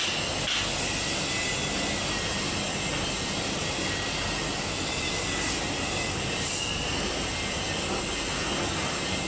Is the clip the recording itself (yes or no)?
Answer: yes